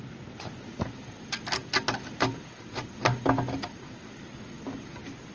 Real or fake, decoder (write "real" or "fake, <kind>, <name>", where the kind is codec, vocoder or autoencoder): real